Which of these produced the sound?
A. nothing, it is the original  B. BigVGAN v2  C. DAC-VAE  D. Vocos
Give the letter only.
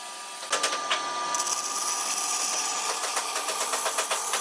A